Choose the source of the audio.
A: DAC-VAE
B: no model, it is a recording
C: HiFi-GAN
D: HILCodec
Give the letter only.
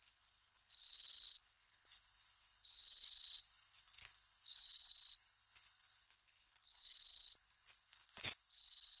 D